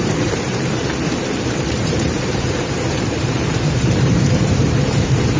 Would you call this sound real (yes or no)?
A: no